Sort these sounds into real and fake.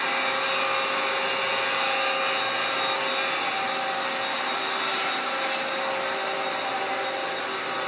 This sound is real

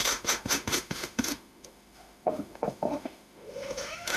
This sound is fake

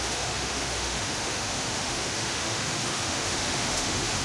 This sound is fake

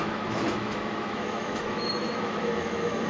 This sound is fake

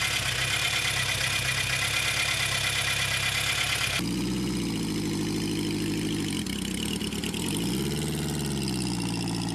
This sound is real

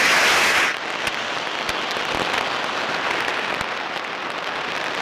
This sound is real